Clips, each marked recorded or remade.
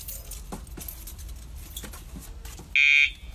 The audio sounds recorded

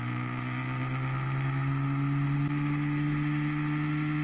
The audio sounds recorded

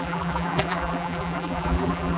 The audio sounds remade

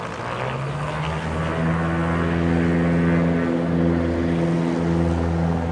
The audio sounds recorded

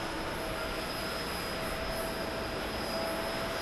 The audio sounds recorded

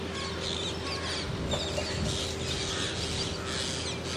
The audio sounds recorded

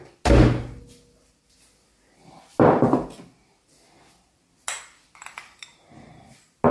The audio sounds recorded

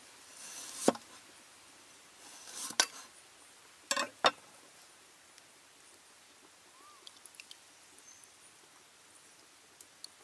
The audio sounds recorded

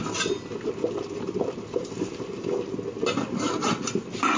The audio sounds recorded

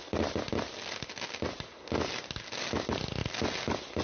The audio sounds recorded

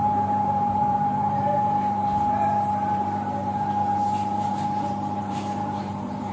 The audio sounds remade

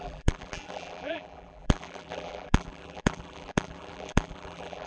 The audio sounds remade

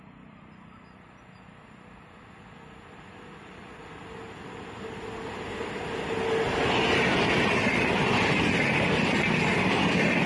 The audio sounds recorded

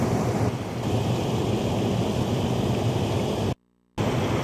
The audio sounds recorded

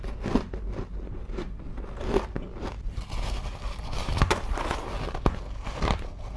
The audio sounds recorded